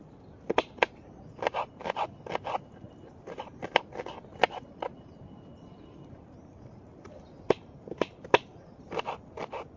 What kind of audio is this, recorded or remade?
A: recorded